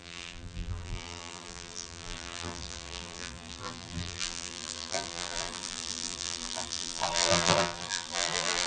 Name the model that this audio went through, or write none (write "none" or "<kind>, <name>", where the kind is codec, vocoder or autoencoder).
vocoder, BigVGAN v2